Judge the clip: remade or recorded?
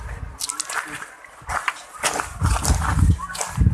recorded